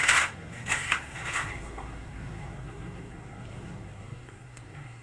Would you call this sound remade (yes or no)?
yes